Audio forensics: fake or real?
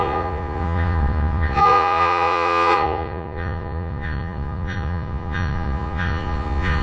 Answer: fake